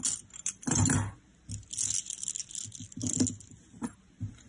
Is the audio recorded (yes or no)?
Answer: yes